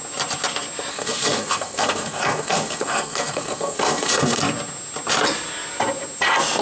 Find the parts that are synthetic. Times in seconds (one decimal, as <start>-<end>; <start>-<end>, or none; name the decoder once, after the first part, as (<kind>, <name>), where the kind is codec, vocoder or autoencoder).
0.9-4.4 (codec, SNAC)